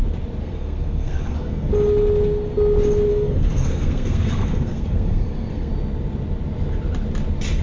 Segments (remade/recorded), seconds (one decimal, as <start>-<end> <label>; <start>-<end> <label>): 0.0-0.4 recorded; 0.4-1.7 remade; 1.7-3.1 recorded; 3.1-5.7 remade; 5.7-7.6 recorded